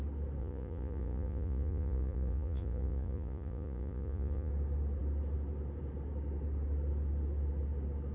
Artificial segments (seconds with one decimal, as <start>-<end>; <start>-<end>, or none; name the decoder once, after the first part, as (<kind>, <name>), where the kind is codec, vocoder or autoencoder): 0.4-4.5 (vocoder, Vocos)